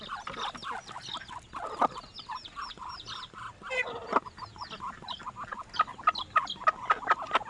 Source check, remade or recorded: recorded